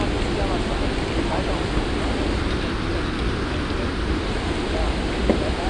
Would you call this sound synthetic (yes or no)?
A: no